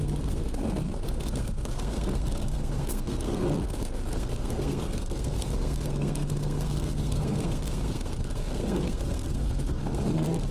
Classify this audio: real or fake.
fake